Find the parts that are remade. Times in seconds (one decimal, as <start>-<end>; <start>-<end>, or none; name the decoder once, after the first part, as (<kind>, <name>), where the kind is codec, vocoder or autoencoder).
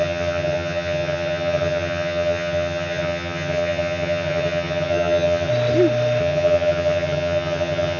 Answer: 0.0-5.5 (vocoder, HiFi-GAN); 6.2-8.0